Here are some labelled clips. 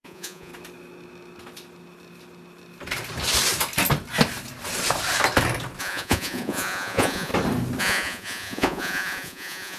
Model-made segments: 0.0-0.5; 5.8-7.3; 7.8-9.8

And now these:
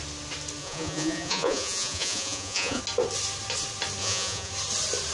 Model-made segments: 0.6-2.8; 4.0-4.5

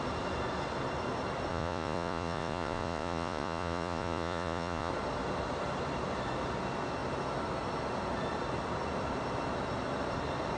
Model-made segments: 1.5-4.9

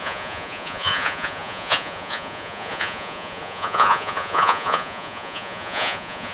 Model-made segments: 0.0-6.3